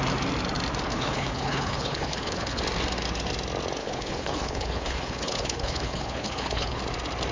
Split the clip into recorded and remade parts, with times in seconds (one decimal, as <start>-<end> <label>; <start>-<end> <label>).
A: 0.0-0.9 recorded; 0.9-2.6 remade; 2.6-3.8 recorded; 3.8-6.8 remade; 6.8-7.3 recorded